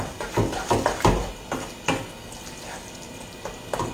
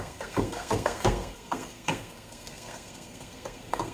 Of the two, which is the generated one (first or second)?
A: second